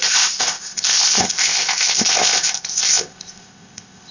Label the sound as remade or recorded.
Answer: remade